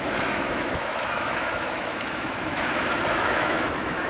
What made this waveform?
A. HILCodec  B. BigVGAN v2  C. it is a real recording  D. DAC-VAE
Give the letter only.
D